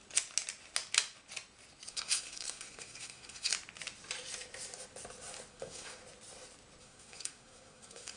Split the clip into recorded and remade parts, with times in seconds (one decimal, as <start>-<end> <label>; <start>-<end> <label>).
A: 0.0-1.9 recorded; 1.9-3.5 remade; 3.5-5.5 recorded; 5.5-6.0 remade; 6.0-6.8 recorded; 6.8-8.2 remade